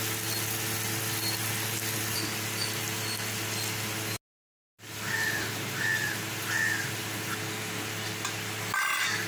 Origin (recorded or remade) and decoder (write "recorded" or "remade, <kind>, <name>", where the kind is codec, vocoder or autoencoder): recorded